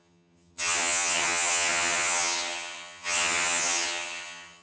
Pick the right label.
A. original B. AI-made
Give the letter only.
B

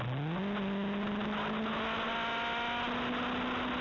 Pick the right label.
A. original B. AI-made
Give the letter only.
A